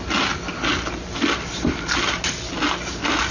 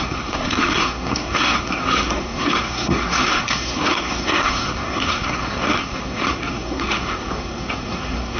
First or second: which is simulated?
second